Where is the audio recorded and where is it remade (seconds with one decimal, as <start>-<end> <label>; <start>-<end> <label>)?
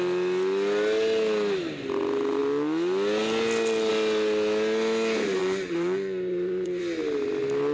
0.0-5.4 recorded; 5.4-6.8 remade; 6.8-7.7 recorded